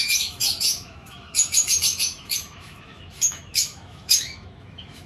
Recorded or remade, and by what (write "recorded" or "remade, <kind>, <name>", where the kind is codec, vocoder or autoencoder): remade, autoencoder, DAC-VAE